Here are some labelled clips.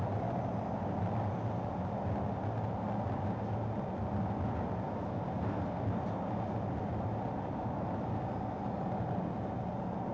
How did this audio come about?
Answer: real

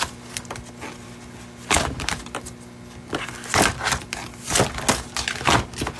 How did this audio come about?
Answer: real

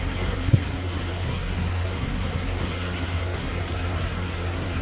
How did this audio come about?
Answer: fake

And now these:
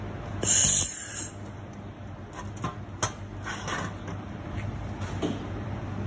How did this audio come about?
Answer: real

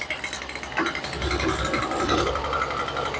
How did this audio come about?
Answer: real